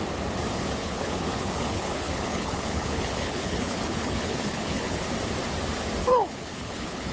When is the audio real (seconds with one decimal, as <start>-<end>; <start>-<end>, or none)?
0.0-0.8; 5.1-6.0